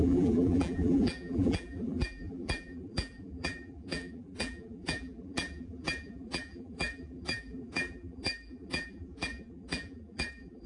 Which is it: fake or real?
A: fake